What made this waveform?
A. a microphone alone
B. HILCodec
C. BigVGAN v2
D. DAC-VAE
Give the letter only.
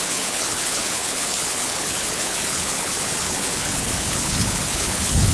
B